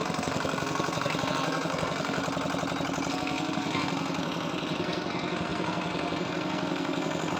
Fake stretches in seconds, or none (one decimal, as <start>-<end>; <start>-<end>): 0.0-2.2; 3.1-7.4